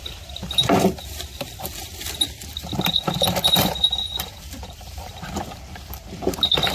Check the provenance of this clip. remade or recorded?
remade